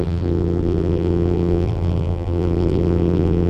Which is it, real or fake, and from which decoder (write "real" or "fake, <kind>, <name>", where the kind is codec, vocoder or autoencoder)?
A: fake, vocoder, BigVGAN v2